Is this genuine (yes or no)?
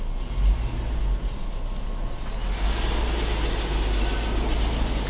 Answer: yes